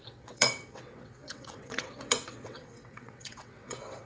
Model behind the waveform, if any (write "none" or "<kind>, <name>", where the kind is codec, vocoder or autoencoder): vocoder, WaveNeXt